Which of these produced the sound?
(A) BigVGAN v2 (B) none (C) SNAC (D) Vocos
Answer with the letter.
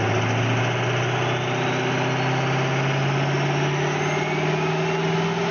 B